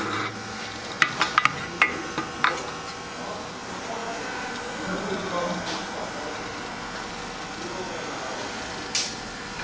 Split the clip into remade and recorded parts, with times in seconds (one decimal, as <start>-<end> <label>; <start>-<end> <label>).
0.0-9.6 recorded